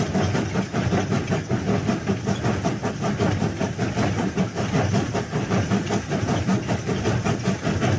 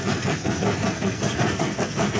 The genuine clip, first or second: first